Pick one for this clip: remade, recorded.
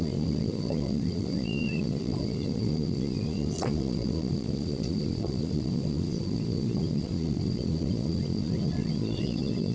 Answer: remade